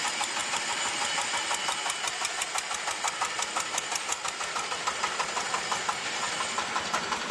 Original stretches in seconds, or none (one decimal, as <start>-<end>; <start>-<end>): 0.0-7.3